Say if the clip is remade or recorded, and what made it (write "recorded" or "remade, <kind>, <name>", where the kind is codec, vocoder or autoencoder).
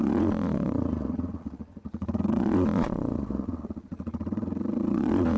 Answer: remade, vocoder, Vocos